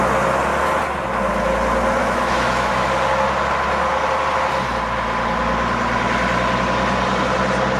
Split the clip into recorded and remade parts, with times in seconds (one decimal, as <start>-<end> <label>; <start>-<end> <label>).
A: 0.0-2.0 recorded; 2.0-2.7 remade; 2.7-7.8 recorded